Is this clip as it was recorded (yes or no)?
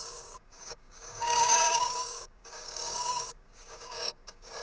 no